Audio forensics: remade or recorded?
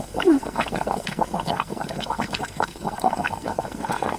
remade